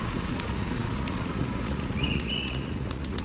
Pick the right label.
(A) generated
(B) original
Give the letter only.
A